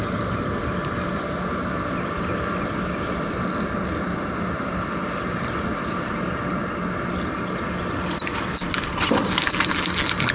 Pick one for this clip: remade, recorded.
recorded